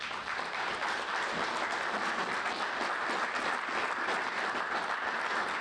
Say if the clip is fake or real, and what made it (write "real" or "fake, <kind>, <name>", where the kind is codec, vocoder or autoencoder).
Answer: real